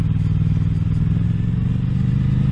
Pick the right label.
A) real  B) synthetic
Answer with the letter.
A